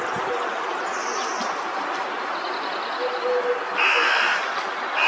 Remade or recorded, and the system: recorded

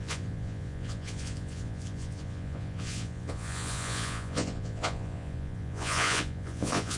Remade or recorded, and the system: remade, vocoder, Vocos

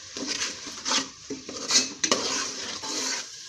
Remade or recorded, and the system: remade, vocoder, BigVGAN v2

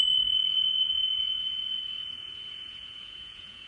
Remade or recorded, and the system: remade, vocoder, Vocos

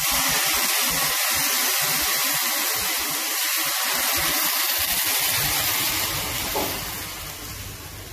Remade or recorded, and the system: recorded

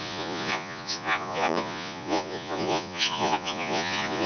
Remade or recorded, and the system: remade, vocoder, Vocos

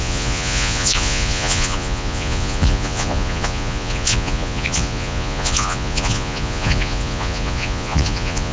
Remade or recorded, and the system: remade, vocoder, Vocos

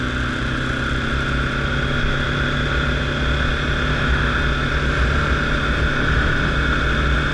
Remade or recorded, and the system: recorded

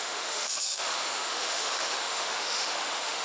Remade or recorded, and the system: remade, autoencoder, DAC-VAE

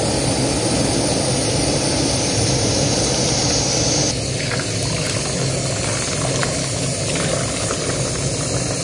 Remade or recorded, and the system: recorded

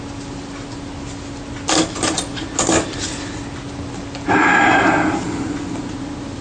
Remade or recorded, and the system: recorded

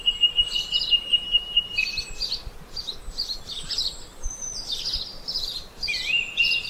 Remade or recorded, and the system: remade, vocoder, BigVGAN v2